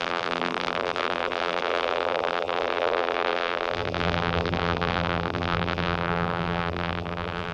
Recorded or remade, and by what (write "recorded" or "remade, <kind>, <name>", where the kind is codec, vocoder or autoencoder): remade, vocoder, BigVGAN v2